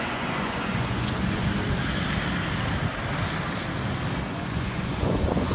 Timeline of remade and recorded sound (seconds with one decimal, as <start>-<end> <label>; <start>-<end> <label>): 0.0-1.5 remade; 1.5-4.3 recorded; 4.3-5.5 remade